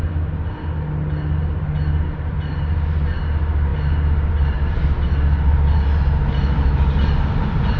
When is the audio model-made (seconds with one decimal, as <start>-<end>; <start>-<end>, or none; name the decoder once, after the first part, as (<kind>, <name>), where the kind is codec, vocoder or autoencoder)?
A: none